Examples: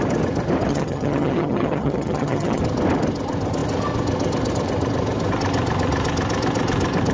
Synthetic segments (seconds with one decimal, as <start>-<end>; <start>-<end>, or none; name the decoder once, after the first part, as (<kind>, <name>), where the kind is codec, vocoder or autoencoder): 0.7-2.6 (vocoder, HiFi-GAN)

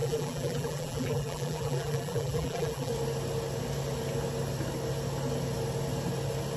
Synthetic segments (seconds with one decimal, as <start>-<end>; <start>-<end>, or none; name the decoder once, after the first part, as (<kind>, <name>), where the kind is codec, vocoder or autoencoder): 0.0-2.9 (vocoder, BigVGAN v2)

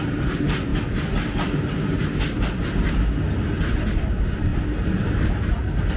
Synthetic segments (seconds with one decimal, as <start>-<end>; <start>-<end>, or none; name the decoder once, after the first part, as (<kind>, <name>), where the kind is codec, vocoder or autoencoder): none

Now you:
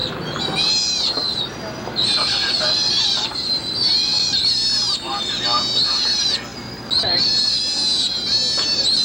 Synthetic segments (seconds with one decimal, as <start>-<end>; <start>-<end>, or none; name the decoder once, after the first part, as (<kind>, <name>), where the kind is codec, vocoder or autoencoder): 1.2-4.3 (vocoder, BigVGAN v2)

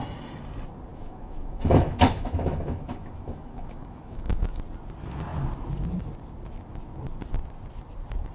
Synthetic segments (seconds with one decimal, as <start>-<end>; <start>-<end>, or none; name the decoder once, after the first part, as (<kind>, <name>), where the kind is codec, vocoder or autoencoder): 0.9-4.4 (autoencoder, DAC-VAE)

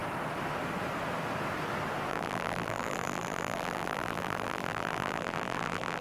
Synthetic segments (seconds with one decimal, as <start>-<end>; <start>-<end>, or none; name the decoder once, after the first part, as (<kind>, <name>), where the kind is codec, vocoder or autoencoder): 2.1-6.0 (vocoder, BigVGAN v2)

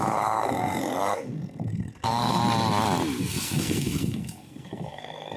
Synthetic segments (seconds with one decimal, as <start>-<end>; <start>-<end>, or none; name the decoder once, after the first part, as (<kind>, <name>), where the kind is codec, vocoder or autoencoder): 0.0-2.4 (codec, SNAC); 3.2-5.4